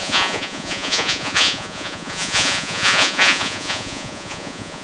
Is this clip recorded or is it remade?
remade